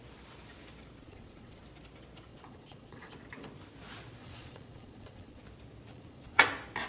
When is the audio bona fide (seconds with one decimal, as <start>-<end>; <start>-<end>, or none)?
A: 0.0-1.0; 1.6-2.3; 3.1-4.2; 5.4-5.9; 6.4-6.9